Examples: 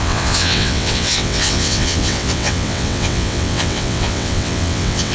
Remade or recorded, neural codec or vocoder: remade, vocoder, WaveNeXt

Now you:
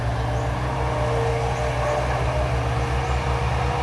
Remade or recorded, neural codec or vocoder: recorded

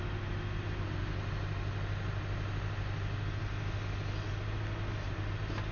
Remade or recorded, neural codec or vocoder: recorded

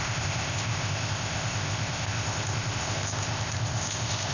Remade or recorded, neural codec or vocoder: remade, codec, ZipCodec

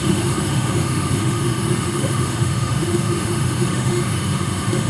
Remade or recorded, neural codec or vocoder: remade, autoencoder, DAC-VAE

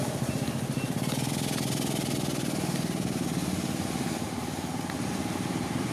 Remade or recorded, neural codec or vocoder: recorded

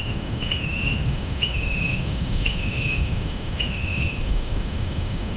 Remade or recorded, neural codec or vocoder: remade, autoencoder, DAC-VAE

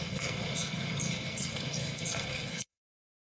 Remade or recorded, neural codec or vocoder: remade, codec, SNAC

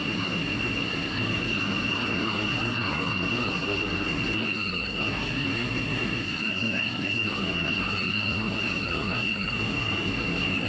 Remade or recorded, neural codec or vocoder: remade, codec, SNAC